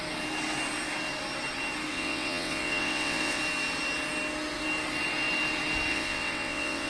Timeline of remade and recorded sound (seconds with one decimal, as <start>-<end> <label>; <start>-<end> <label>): 0.0-1.9 recorded; 1.9-3.4 remade; 3.4-5.9 recorded; 5.9-6.9 remade